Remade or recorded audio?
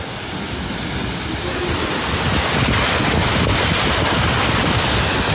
recorded